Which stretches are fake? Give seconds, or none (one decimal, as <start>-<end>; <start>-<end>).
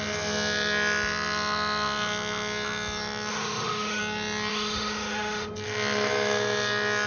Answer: 3.3-4.0; 4.5-5.5